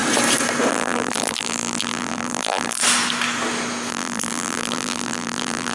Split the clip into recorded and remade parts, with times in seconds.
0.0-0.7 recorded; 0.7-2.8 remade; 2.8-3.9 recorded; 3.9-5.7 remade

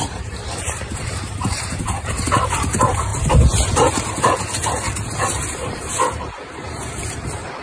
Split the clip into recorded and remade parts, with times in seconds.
0.0-3.1 remade; 3.1-4.4 recorded; 4.4-7.6 remade